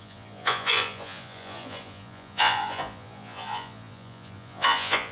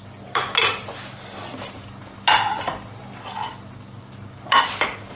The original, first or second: second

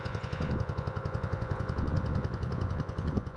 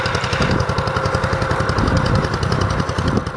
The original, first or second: second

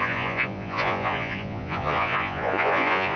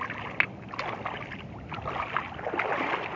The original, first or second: second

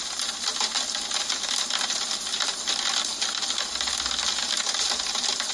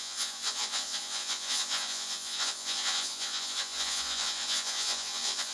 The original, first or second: first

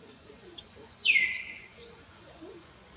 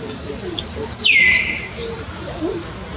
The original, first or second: second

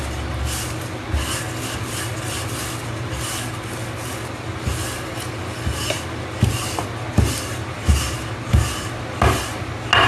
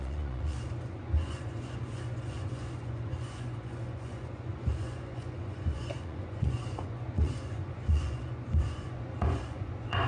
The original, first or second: first